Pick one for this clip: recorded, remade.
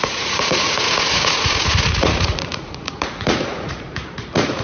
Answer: remade